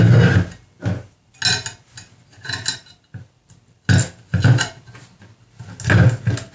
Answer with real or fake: real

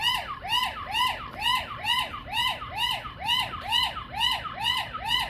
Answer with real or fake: real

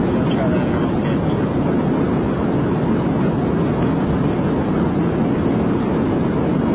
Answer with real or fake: real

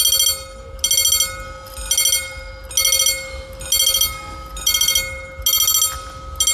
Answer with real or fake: real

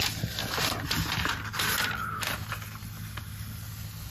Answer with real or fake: real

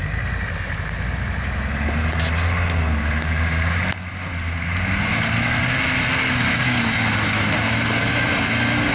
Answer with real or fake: real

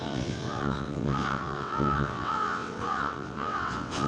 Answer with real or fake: fake